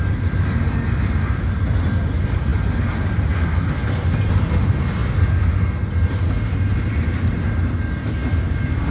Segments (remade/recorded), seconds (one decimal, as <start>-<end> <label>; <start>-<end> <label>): 0.0-8.9 recorded